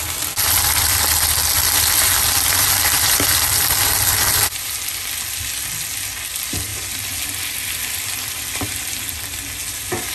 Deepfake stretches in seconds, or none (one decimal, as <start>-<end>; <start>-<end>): none